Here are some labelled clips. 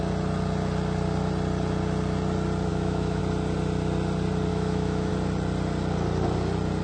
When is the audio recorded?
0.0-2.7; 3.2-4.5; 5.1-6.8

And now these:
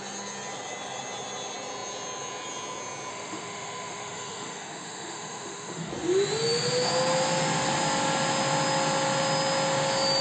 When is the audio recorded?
0.0-3.1; 5.9-10.2

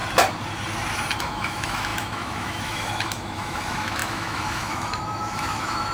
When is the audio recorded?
0.0-1.2

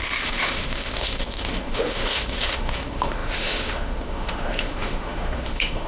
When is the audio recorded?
none

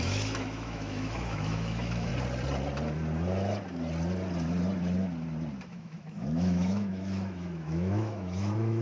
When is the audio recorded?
2.1-5.7

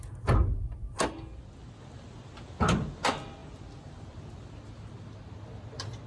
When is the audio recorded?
0.0-6.1